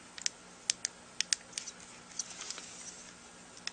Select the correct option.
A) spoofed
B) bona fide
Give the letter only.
B